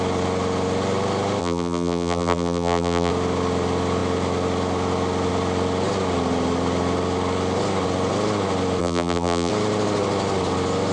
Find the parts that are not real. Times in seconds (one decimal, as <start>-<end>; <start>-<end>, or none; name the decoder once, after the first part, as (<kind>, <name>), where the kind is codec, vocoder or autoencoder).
1.4-3.1 (vocoder, BigVGAN v2); 8.8-9.5